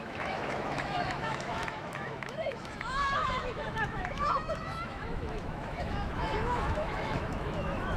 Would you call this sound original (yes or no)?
no